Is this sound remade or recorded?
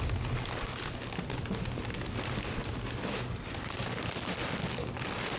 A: recorded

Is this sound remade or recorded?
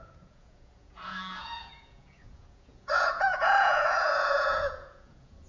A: remade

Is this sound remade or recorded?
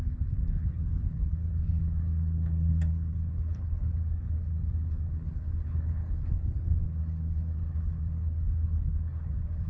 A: remade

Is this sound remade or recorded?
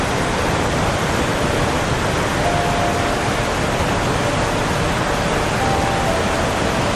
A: recorded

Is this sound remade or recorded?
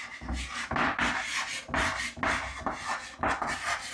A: recorded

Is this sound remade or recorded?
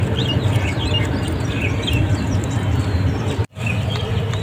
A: recorded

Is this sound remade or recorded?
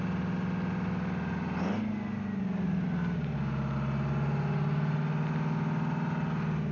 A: recorded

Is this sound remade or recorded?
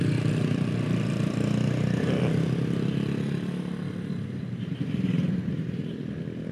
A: recorded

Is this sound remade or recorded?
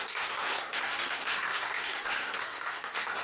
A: remade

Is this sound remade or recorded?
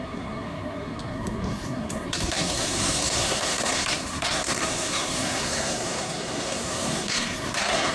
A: remade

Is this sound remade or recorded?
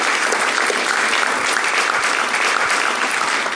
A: recorded